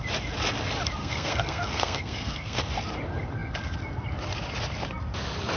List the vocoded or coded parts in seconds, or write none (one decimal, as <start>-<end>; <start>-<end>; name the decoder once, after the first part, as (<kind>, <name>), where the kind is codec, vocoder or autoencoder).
1.0-2.6 (codec, SNAC)